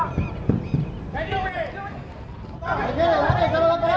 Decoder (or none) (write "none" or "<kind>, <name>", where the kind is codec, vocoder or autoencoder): none